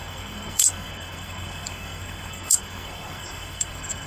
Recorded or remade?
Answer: remade